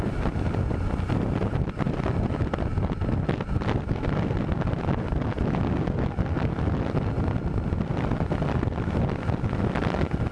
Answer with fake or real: real